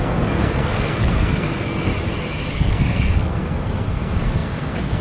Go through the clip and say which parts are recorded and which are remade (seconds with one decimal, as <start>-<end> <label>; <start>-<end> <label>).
0.0-1.9 remade; 1.9-2.5 recorded; 2.5-5.0 remade